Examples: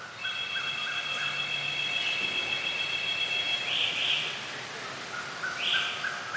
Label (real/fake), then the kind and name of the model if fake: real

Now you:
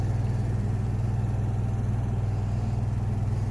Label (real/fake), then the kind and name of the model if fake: real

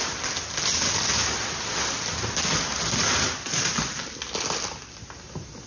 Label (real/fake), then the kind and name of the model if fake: real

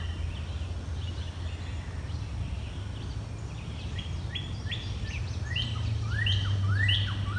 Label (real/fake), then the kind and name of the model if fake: real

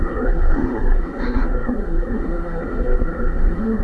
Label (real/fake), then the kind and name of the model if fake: fake, codec, SNAC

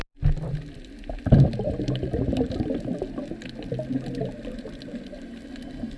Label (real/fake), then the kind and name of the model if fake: real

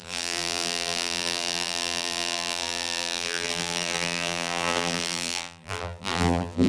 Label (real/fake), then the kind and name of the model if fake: fake, vocoder, BigVGAN v2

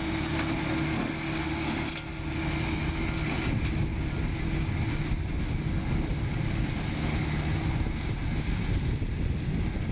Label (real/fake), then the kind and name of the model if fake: real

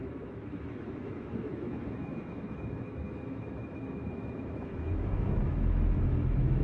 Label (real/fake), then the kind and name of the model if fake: fake, autoencoder, DAC-VAE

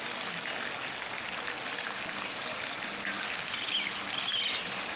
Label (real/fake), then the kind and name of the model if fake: real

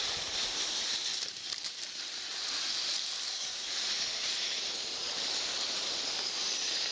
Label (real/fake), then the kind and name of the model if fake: real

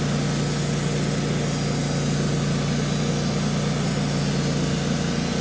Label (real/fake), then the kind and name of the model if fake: real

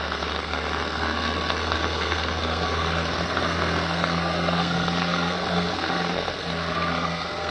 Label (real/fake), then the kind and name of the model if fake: fake, codec, SNAC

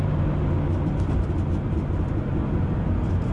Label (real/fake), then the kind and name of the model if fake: real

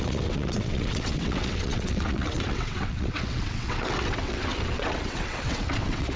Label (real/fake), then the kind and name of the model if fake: fake, vocoder, WaveNeXt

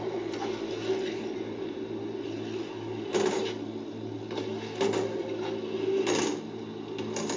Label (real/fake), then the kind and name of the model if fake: real